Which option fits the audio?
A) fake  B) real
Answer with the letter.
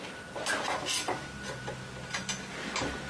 B